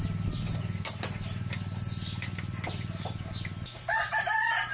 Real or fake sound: real